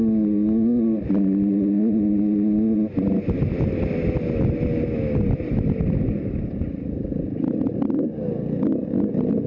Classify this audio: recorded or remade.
recorded